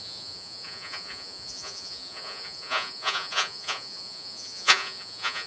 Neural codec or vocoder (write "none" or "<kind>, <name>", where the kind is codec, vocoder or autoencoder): vocoder, Vocos